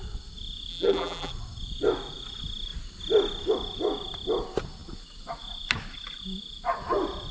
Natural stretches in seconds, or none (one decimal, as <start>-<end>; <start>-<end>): 0.0-0.7; 1.3-7.3